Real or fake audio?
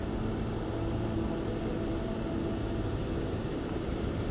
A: real